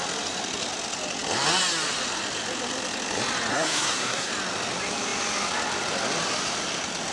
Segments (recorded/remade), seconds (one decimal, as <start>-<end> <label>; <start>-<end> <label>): 0.0-3.5 recorded; 3.5-4.3 remade; 4.3-7.1 recorded